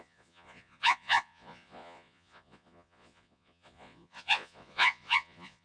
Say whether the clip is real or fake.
fake